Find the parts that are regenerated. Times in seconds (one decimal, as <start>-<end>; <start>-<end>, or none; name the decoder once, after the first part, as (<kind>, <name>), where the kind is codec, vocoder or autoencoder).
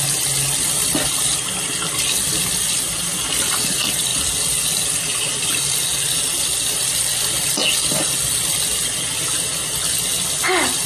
none